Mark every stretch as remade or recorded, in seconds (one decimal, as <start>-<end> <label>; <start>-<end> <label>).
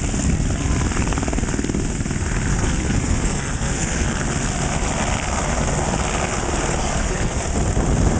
0.0-2.5 recorded; 2.5-4.1 remade; 4.1-6.8 recorded; 6.8-7.4 remade; 7.4-8.2 recorded